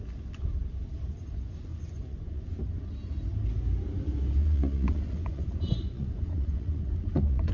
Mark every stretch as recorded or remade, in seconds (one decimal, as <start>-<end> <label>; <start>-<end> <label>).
0.0-1.7 recorded; 1.7-2.6 remade; 2.6-4.4 recorded; 4.4-7.5 remade